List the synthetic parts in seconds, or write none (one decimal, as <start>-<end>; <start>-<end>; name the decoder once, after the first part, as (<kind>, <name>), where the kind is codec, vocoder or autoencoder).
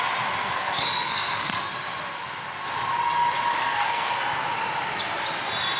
0.4-1.6 (codec, SNAC); 3.6-4.2